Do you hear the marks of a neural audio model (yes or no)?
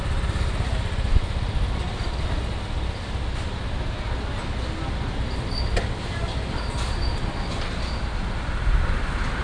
no